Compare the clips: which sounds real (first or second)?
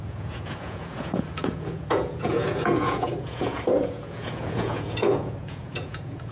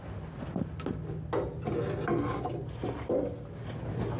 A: second